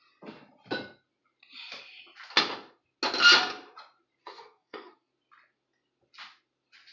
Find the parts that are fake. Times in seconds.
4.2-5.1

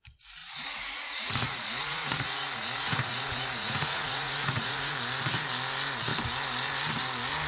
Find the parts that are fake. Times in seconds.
0.4-4.9

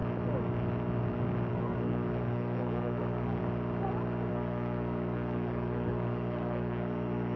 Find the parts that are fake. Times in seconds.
1.5-3.4; 4.3-7.4

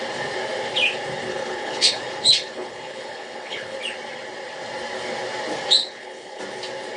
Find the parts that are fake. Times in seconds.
1.3-3.8; 5.8-6.4

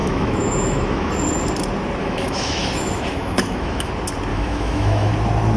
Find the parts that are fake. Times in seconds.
0.0-1.1; 2.0-3.9; 4.3-5.1

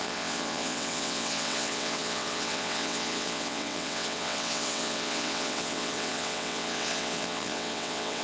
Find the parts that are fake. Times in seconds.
0.0-8.2